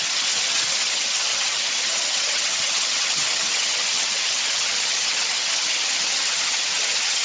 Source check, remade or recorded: remade